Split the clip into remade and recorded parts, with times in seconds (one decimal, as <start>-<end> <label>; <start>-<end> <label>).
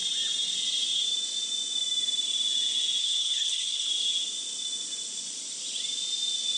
0.0-3.0 recorded; 3.0-3.9 remade; 3.9-6.6 recorded